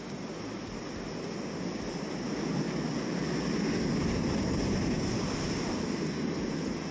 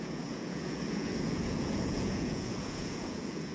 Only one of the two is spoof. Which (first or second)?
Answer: second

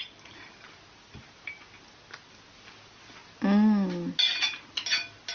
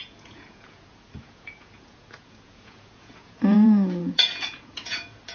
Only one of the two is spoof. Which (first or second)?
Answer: second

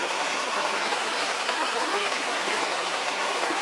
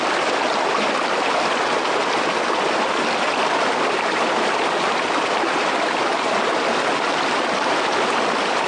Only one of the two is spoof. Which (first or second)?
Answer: first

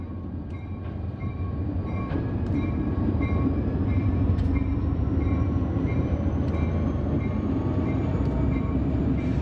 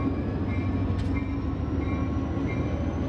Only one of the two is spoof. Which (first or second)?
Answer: first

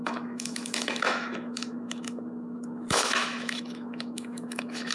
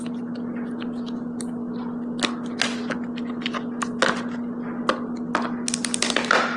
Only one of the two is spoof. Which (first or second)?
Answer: first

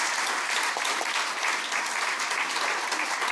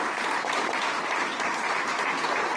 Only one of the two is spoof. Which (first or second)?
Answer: second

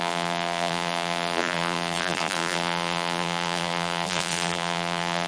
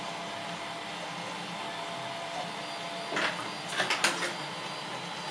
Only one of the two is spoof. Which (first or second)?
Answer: first